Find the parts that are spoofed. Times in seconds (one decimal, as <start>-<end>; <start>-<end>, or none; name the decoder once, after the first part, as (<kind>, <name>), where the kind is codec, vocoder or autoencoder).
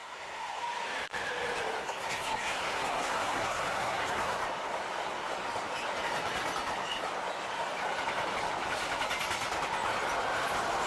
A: 0.0-0.6 (codec, SNAC); 1.8-4.4